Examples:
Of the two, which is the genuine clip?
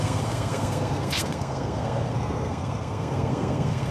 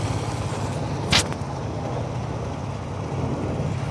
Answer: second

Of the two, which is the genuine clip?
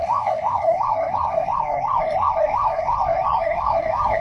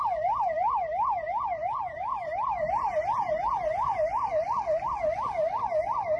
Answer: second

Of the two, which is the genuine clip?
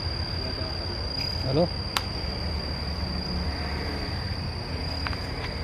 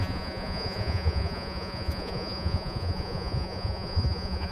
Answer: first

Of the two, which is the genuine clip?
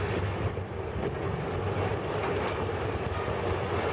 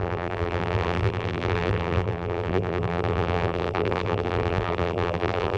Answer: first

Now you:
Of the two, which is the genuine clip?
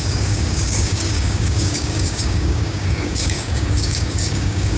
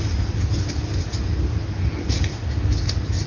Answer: second